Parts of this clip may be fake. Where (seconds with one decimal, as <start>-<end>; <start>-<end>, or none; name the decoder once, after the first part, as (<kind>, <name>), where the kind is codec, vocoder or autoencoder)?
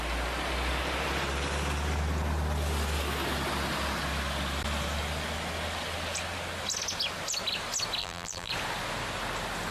8.0-8.5 (vocoder, BigVGAN v2)